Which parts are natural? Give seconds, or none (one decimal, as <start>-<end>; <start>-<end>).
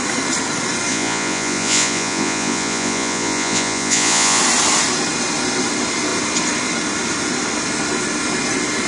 0.0-0.9; 4.4-8.9